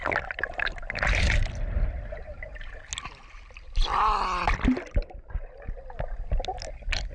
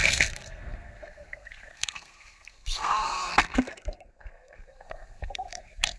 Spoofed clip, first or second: second